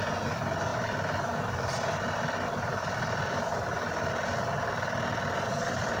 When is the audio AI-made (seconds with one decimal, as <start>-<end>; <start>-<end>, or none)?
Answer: 0.7-4.1